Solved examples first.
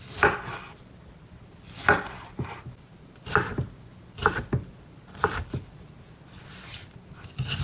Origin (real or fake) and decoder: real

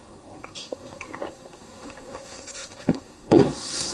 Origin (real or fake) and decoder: fake, codec, SNAC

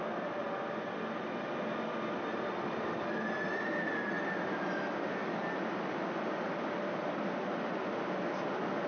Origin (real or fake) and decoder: real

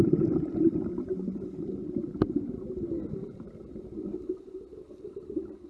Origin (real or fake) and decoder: real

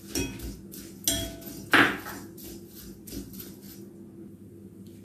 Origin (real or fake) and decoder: real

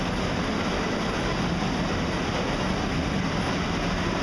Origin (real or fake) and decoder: real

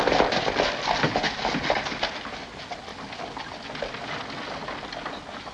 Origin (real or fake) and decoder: real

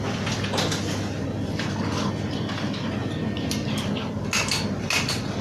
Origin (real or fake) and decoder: real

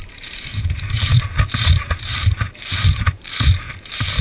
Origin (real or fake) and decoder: fake, vocoder, BigVGAN v2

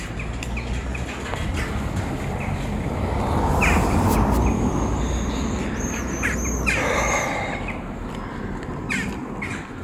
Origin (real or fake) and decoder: real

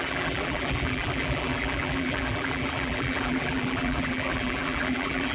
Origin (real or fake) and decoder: fake, vocoder, BigVGAN v2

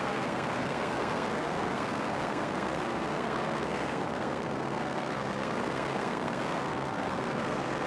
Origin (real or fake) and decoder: fake, codec, SNAC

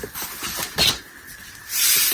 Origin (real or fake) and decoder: real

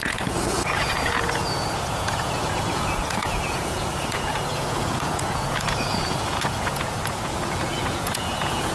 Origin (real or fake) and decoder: fake, vocoder, Vocos